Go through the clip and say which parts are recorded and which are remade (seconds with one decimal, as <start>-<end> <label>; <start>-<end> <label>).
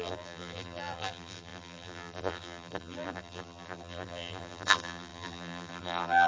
0.0-6.3 remade